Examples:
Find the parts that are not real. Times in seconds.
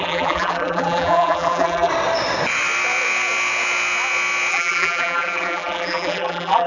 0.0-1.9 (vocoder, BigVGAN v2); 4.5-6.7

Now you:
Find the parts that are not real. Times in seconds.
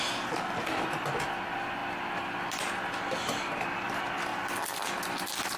none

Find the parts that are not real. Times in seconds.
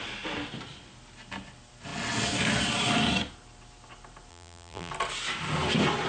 4.3-4.9 (vocoder, BigVGAN v2)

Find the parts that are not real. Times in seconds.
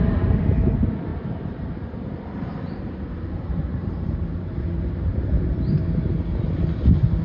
1.1-4.6 (vocoder, BigVGAN v2)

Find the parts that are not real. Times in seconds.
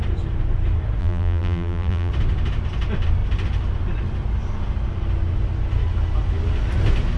1.0-2.1 (vocoder, BigVGAN v2)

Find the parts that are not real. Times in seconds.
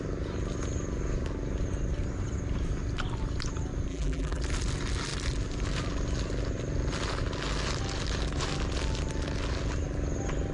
3.9-4.4 (vocoder, BigVGAN v2)